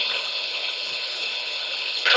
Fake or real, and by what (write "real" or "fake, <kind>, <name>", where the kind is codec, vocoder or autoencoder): fake, codec, HILCodec